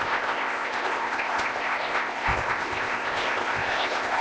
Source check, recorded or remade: remade